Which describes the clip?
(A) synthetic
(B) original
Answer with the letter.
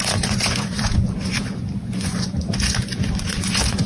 A